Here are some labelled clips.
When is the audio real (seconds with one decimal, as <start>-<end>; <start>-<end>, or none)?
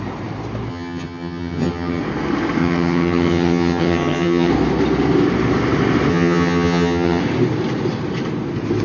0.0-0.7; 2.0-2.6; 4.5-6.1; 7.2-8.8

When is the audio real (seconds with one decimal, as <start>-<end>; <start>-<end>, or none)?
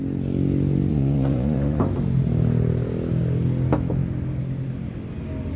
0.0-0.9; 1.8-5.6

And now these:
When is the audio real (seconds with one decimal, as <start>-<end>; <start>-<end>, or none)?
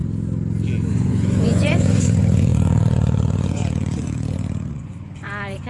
0.0-0.9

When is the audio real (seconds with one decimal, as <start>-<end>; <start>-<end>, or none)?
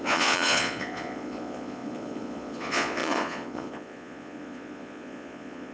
none